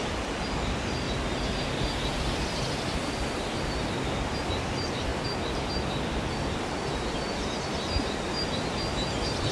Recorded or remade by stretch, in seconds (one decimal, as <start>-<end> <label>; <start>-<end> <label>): 0.0-9.5 recorded